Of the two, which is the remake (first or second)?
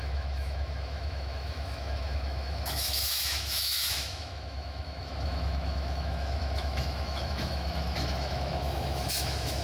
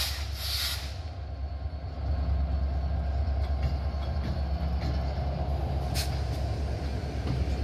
first